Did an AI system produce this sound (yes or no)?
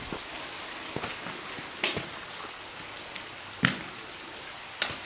no